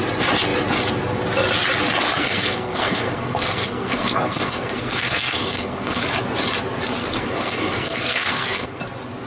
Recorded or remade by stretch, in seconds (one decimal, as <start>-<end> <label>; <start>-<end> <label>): 0.0-2.2 recorded; 2.2-6.0 remade; 6.0-7.0 recorded; 7.0-8.8 remade; 8.8-9.3 recorded